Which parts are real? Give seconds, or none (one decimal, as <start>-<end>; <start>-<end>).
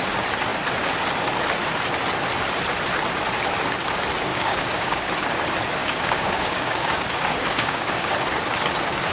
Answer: 0.0-4.3; 5.1-5.8; 8.1-9.1